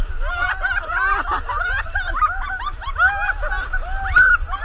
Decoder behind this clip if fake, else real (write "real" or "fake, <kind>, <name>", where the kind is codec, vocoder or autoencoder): real